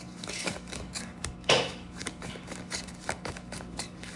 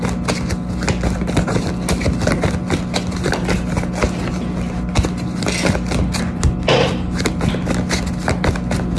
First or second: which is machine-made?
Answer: first